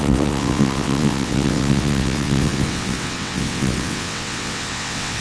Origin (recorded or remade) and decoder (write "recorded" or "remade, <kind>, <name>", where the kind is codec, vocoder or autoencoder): remade, vocoder, WaveNeXt